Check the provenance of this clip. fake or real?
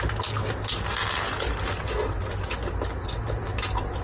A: real